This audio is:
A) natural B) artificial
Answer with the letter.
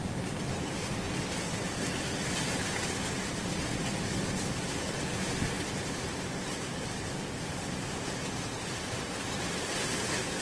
A